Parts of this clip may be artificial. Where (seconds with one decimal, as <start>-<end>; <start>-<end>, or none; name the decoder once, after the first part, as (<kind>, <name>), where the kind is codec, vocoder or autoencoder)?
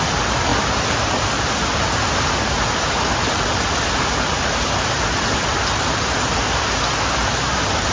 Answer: none